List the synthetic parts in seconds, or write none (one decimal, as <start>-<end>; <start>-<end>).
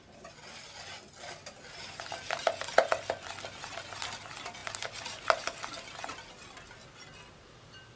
none